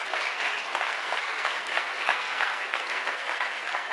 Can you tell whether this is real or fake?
fake